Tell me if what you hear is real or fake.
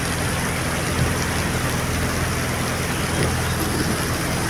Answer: real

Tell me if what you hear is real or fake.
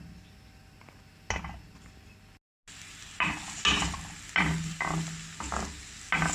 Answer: real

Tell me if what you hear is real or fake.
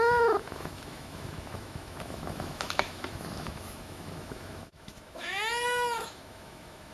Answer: fake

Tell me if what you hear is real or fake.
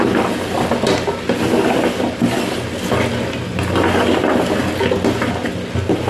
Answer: real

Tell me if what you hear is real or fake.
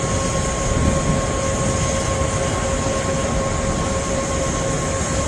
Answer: real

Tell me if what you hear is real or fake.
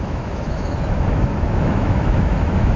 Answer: fake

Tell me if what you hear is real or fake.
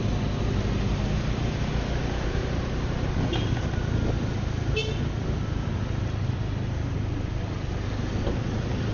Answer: real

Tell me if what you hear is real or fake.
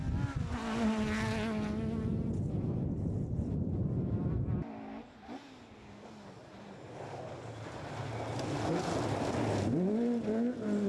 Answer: real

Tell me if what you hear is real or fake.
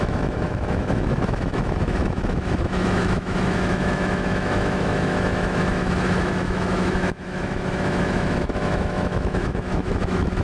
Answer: fake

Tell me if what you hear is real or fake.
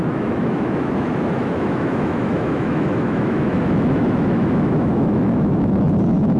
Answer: fake